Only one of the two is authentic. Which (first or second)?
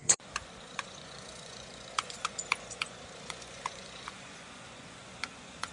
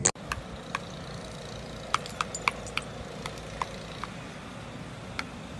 second